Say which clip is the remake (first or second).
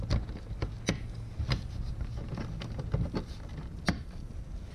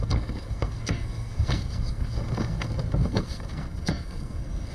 second